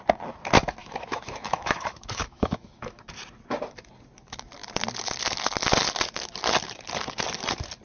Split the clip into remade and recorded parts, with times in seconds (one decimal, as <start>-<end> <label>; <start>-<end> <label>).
0.0-0.8 recorded; 0.8-3.0 remade; 3.0-7.8 recorded

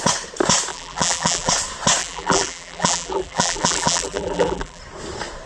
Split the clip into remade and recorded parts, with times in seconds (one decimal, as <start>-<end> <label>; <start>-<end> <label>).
0.0-0.7 recorded; 0.7-1.5 remade; 1.5-2.0 recorded; 2.0-4.8 remade; 4.8-5.5 recorded